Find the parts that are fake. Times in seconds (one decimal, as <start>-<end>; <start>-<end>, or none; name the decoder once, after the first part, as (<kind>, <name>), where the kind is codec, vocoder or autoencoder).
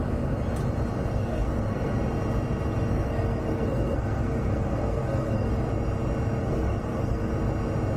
1.1-1.9 (codec, SNAC); 2.9-5.5; 6.4-7.3